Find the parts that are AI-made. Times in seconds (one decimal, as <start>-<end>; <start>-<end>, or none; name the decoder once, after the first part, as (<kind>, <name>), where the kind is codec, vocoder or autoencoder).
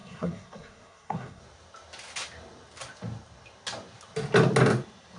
0.0-1.4 (codec, SNAC)